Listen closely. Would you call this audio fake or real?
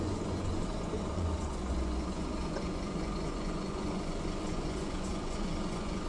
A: fake